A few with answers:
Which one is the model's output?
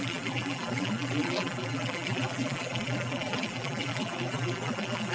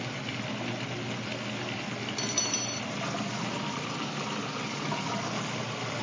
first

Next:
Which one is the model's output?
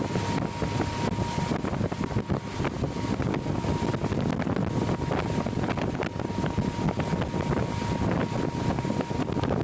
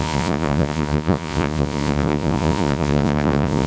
second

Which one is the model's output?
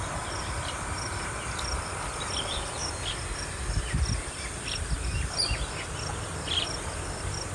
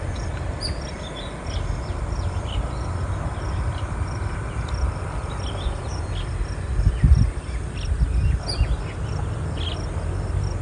first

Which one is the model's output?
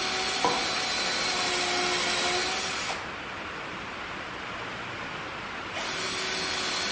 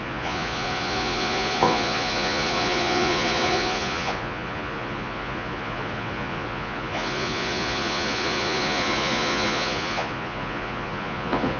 second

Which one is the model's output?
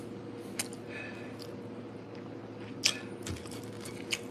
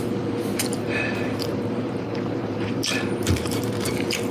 second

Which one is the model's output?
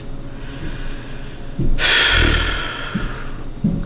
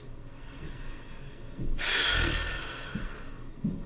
second